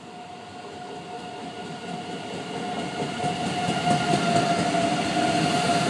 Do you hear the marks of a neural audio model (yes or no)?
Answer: no